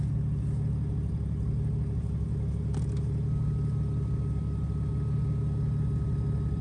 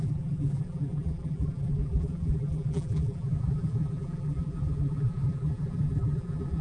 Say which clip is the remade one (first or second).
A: second